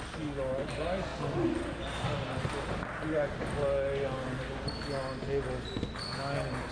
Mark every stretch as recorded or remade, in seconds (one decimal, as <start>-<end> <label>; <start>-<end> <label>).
0.0-6.7 recorded